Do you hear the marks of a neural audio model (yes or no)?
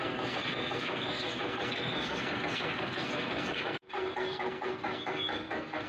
yes